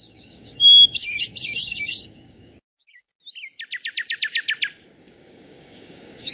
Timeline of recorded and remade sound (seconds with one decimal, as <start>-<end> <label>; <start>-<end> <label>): 0.0-3.1 remade; 3.1-5.0 recorded; 5.0-6.3 remade